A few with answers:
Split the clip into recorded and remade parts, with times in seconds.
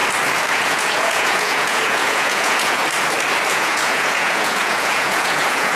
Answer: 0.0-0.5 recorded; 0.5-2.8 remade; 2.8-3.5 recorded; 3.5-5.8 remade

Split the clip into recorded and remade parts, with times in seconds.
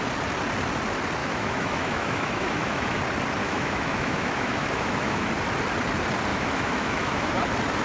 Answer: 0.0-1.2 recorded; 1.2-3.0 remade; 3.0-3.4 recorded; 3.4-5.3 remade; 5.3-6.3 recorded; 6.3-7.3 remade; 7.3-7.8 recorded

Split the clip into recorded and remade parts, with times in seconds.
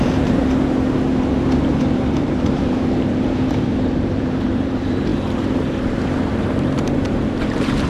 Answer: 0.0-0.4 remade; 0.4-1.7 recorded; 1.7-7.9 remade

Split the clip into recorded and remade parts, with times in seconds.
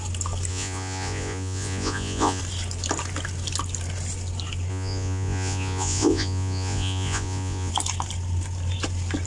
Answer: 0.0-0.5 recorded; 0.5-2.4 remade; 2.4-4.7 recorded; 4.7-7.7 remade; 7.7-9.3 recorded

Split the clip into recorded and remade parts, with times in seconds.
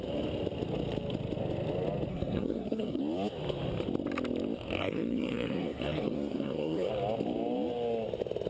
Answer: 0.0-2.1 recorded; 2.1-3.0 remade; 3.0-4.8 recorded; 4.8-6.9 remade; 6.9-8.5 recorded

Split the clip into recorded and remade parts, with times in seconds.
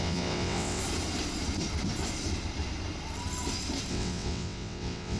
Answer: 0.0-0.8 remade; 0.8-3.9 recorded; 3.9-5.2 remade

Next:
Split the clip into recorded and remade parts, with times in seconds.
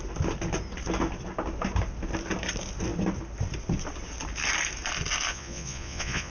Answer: 0.0-5.3 recorded; 5.3-6.3 remade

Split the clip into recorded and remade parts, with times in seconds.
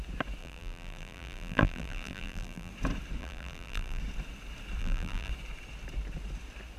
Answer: 0.0-0.4 recorded; 0.4-2.7 remade; 2.7-3.2 recorded; 3.2-4.0 remade; 4.0-4.8 recorded; 4.8-5.3 remade; 5.3-6.8 recorded